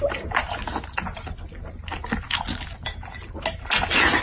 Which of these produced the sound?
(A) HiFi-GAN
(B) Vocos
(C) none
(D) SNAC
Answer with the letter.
C